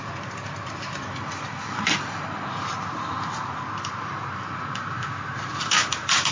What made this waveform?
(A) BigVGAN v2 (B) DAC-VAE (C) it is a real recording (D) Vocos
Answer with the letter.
A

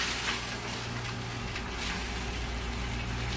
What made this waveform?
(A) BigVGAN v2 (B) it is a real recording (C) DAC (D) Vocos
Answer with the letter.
B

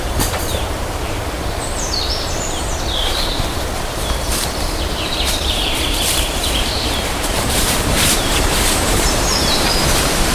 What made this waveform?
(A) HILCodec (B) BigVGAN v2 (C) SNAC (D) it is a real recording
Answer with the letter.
B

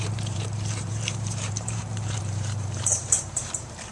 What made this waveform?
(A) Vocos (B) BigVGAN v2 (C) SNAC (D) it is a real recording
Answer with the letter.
B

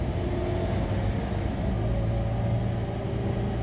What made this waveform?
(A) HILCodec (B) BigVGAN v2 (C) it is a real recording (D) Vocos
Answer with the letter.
C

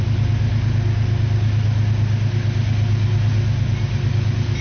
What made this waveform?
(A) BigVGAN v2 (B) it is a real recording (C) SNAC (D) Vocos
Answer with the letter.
B